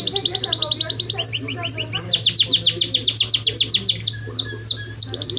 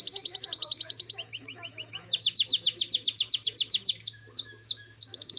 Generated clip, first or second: second